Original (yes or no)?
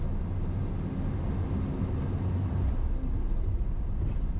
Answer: yes